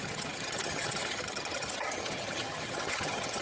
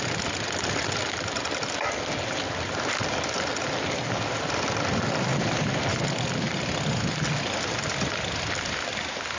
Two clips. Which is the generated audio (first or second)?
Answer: first